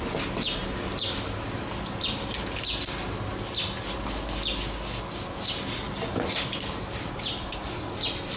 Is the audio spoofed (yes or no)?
no